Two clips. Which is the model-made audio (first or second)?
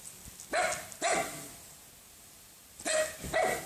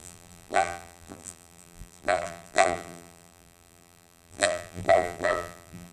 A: second